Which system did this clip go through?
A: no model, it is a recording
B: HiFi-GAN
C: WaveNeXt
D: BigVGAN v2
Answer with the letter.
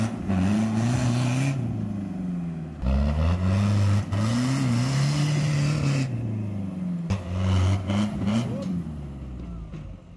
A